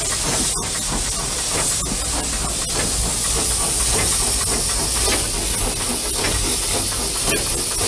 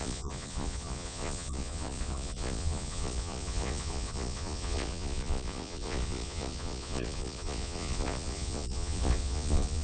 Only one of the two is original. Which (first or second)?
first